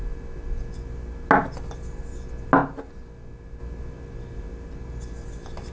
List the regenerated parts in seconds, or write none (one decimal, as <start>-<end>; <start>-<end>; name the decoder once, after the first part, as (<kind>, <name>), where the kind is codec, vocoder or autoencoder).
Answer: none